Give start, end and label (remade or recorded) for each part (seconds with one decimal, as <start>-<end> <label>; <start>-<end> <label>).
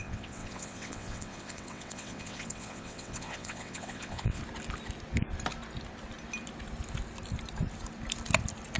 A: 0.0-4.4 remade; 4.4-8.8 recorded